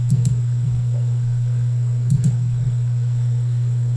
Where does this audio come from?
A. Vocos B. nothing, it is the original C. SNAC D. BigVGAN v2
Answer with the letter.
C